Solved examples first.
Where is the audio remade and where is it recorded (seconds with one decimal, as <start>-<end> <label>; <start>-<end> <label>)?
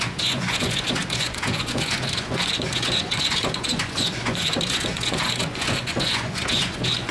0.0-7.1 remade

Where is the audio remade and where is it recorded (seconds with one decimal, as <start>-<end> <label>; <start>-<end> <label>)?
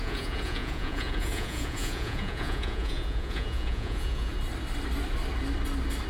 0.0-4.3 remade; 4.3-6.1 recorded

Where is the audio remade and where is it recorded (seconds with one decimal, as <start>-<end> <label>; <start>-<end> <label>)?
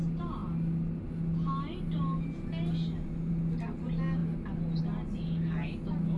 0.0-6.2 recorded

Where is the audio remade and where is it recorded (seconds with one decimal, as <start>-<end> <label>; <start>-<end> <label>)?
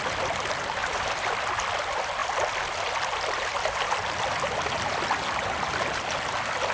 0.0-6.7 recorded